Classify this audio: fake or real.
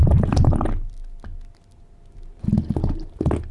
real